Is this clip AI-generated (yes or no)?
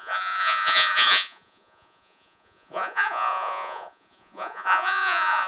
yes